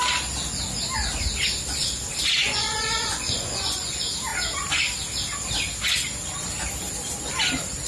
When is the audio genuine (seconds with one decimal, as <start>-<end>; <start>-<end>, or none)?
0.0-2.4; 3.9-7.9